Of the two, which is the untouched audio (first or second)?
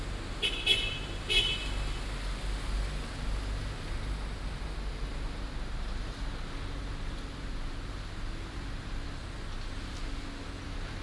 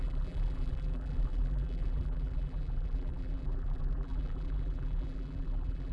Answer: first